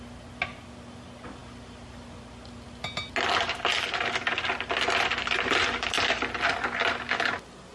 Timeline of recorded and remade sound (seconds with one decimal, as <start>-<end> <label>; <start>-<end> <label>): 0.0-7.7 recorded